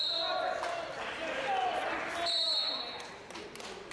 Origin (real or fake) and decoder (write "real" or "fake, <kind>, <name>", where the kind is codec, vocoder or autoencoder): real